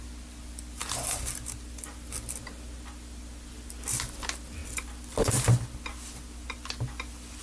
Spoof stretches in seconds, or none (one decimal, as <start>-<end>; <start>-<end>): 4.6-7.4